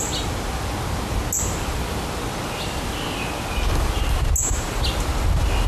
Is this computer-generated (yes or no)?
no